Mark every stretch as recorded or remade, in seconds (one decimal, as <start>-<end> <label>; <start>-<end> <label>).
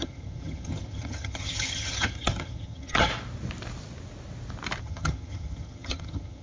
0.0-3.1 remade; 3.1-4.8 recorded; 4.8-6.4 remade